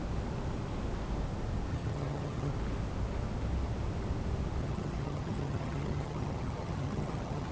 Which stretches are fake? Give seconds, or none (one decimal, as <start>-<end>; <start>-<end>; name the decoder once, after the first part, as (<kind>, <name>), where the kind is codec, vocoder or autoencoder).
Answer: 1.7-2.5 (vocoder, HiFi-GAN); 4.6-7.5